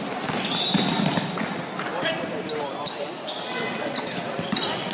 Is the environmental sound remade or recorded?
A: recorded